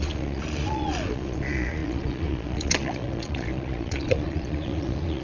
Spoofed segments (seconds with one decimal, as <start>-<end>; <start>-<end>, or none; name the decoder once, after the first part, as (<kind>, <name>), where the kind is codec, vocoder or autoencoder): 0.0-5.2 (vocoder, Vocos)